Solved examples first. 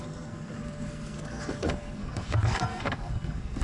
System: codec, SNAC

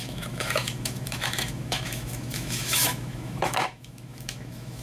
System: autoencoder, DAC-VAE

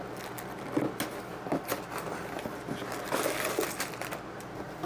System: none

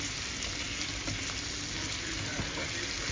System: none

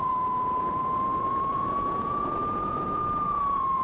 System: vocoder, Vocos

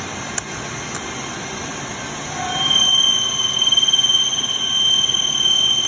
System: none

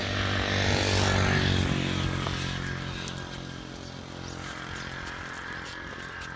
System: none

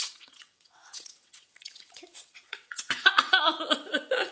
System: vocoder, WaveNeXt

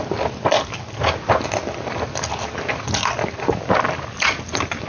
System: none